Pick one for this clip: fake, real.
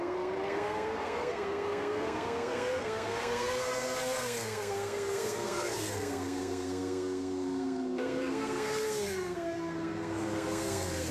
fake